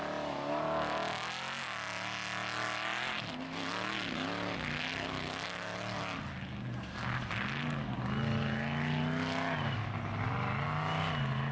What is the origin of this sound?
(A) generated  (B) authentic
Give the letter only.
B